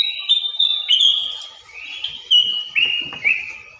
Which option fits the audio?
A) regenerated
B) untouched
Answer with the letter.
B